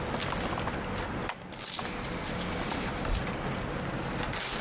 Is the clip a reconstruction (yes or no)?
no